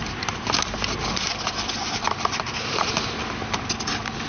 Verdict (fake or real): real